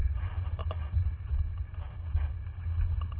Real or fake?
real